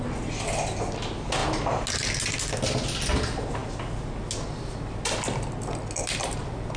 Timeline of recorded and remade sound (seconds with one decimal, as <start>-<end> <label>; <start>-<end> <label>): 0.0-6.8 recorded